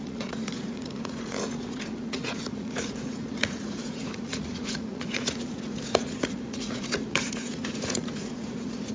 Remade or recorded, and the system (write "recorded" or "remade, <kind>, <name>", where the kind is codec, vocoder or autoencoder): remade, vocoder, Vocos